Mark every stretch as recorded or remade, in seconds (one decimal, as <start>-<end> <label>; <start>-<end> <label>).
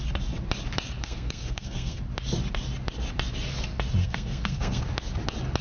0.0-1.0 recorded; 1.0-2.0 remade; 2.0-4.0 recorded; 4.0-4.8 remade; 4.8-5.6 recorded